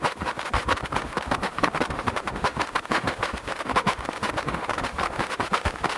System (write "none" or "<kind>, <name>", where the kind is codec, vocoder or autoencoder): autoencoder, DAC-VAE